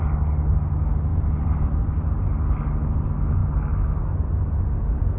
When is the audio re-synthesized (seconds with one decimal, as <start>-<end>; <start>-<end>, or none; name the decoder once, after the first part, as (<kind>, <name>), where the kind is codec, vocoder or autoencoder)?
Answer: 1.1-2.4 (vocoder, BigVGAN v2)